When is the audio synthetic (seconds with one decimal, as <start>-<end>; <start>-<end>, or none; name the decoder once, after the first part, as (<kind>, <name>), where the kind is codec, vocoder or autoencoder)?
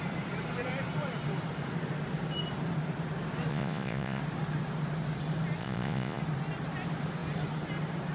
3.5-4.2 (vocoder, Vocos); 5.6-6.2